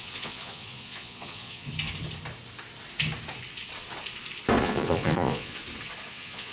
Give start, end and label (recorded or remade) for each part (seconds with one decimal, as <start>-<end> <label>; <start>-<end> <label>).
0.0-1.7 remade; 1.7-4.6 recorded; 4.6-5.6 remade; 5.6-6.1 recorded; 6.1-6.5 remade